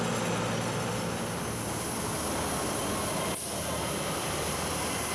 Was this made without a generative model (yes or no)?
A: yes